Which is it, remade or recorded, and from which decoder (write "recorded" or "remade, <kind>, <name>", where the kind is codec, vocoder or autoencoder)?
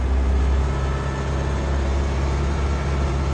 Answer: recorded